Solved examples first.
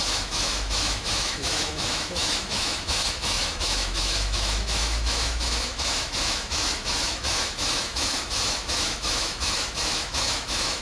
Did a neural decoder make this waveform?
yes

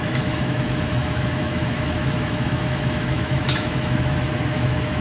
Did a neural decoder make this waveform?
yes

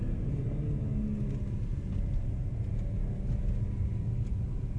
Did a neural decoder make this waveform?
no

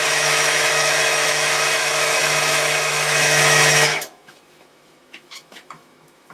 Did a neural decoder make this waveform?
yes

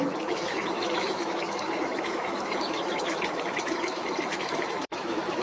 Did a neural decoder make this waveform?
yes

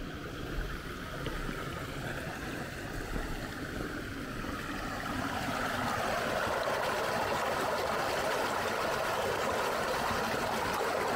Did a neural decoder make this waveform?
no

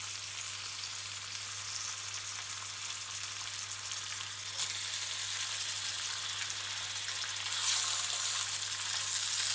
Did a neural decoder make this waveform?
no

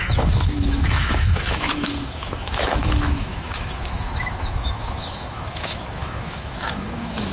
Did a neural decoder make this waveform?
yes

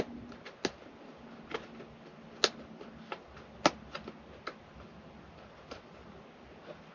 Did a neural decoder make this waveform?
no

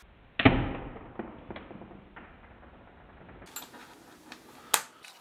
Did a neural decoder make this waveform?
no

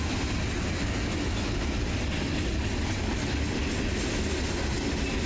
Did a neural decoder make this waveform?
no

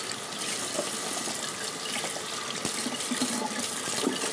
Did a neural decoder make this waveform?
no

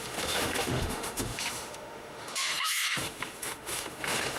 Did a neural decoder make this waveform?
yes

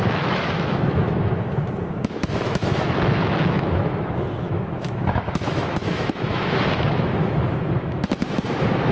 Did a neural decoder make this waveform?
yes